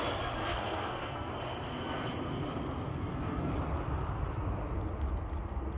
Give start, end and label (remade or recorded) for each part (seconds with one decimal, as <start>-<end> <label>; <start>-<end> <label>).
0.0-0.5 recorded; 0.5-1.3 remade; 1.3-2.9 recorded; 2.9-3.5 remade; 3.5-5.8 recorded